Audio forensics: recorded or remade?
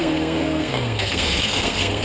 remade